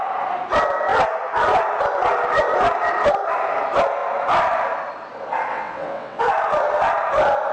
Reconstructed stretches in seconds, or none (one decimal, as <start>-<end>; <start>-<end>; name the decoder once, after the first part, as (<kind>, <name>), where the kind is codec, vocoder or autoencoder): 5.5-6.2 (vocoder, WaveNeXt)